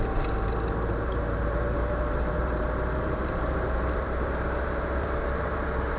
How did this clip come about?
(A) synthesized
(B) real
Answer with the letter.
A